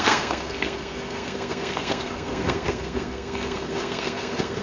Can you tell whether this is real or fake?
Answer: fake